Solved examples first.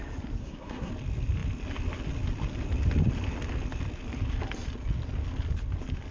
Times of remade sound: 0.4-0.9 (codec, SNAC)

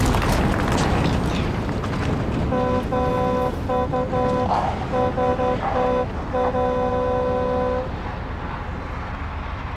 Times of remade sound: none

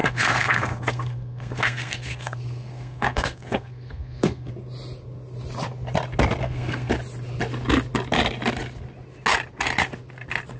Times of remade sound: 0.0-4.5 (codec, SNAC); 6.4-6.9

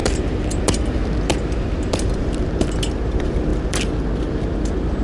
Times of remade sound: 0.0-5.0 (vocoder, BigVGAN v2)